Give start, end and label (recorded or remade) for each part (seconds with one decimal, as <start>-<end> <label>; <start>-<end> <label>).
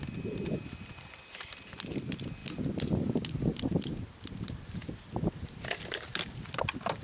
0.0-7.0 recorded